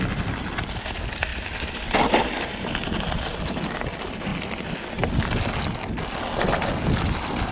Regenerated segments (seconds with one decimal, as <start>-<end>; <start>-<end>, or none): 1.3-2.7

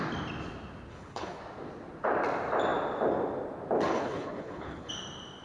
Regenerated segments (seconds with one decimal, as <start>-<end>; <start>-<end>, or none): 0.9-1.4; 3.9-4.9

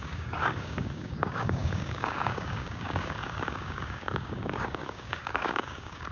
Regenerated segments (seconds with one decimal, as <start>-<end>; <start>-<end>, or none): 0.0-6.1

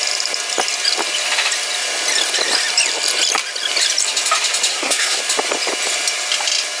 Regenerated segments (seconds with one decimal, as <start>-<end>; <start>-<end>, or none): 4.7-5.2

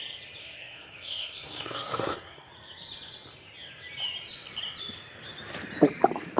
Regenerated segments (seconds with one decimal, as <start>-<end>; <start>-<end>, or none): 0.4-2.5